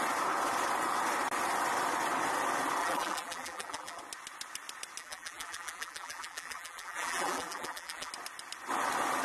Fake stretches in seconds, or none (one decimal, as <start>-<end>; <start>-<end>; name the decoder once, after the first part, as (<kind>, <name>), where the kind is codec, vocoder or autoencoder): 2.8-4.0 (vocoder, BigVGAN v2); 5.0-8.1